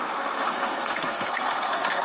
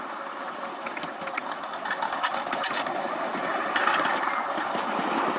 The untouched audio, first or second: second